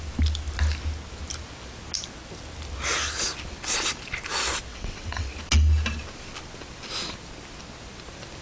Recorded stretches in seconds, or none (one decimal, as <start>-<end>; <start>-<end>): 0.0-4.7; 5.3-8.4